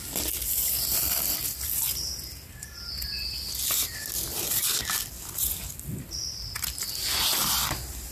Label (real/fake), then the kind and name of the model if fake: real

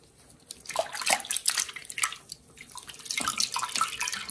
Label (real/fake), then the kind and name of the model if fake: real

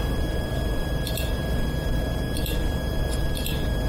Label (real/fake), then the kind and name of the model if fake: fake, vocoder, BigVGAN v2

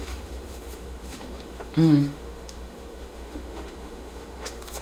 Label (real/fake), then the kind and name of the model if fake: fake, autoencoder, DAC-VAE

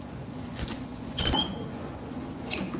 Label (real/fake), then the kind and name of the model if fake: fake, vocoder, Vocos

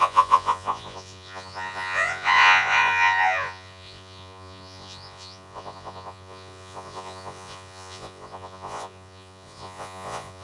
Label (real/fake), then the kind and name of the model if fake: fake, vocoder, Vocos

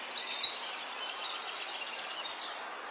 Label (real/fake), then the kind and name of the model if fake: real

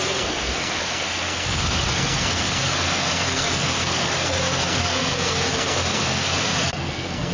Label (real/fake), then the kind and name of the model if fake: fake, codec, SNAC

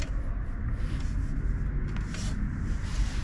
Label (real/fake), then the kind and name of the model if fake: real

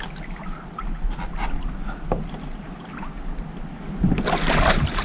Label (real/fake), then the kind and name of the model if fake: real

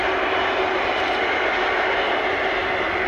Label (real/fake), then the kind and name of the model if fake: real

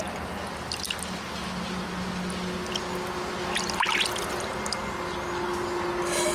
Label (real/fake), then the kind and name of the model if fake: real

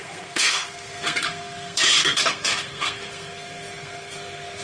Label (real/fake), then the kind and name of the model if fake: fake, codec, SNAC